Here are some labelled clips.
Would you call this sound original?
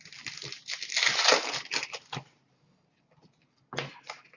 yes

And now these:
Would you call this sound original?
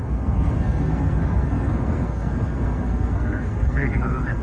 no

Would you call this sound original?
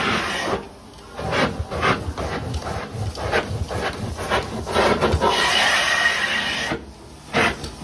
yes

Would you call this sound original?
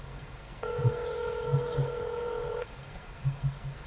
no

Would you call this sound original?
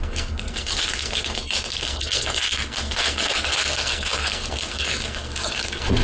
no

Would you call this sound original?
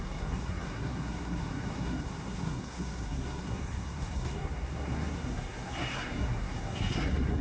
no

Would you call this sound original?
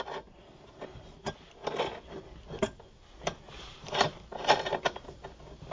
yes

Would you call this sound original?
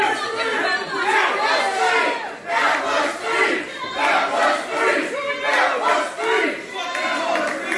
yes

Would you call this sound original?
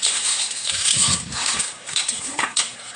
no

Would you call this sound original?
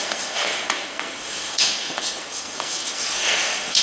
no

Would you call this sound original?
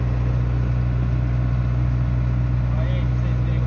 yes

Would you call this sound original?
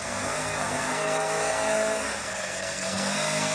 no